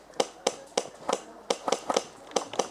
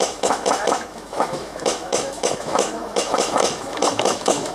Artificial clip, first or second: second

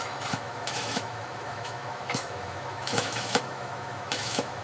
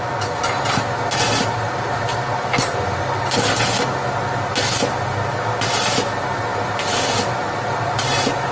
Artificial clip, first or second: first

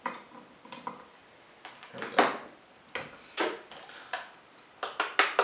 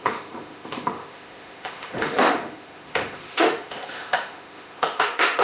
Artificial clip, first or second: second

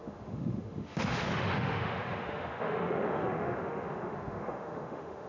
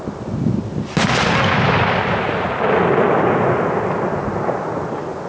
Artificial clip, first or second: first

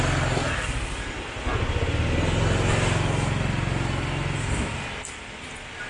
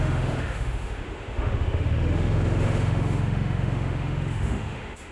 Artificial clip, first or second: second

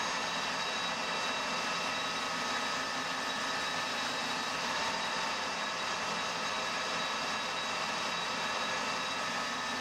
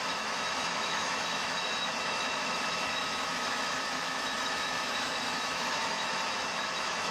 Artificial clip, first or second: second